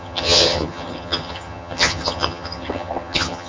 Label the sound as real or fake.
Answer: fake